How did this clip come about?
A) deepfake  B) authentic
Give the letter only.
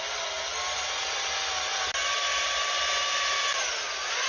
B